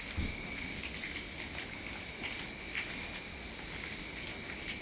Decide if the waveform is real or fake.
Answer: real